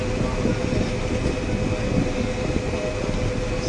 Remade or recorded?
recorded